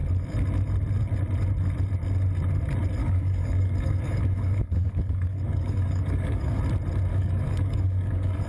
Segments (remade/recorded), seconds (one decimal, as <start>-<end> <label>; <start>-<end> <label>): 0.0-3.0 recorded; 3.0-6.6 remade; 6.6-7.1 recorded; 7.1-8.5 remade